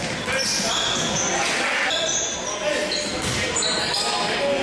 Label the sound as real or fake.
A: real